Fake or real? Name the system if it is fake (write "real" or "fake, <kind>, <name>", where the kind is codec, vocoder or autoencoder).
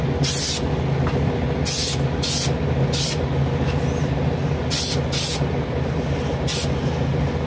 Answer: real